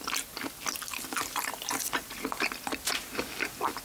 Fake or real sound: real